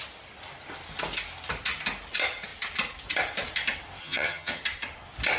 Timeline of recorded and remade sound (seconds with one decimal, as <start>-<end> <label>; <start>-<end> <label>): 0.0-4.0 recorded; 4.0-4.6 remade; 4.6-5.4 recorded